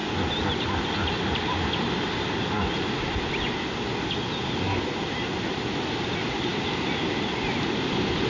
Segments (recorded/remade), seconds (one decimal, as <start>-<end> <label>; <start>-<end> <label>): 0.0-8.3 recorded